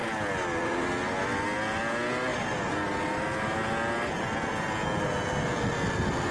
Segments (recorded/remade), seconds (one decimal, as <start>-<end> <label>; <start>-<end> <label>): 0.0-6.3 recorded